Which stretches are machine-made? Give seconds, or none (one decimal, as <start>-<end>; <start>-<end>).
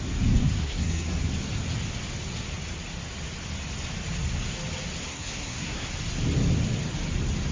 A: 0.4-1.3; 5.0-5.9